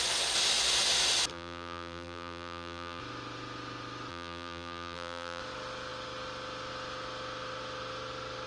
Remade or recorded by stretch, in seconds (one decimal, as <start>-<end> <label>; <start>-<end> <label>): 0.0-1.3 recorded; 1.3-3.0 remade; 3.0-4.1 recorded; 4.1-5.4 remade; 5.4-8.5 recorded